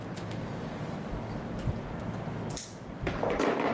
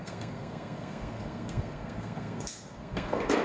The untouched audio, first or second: first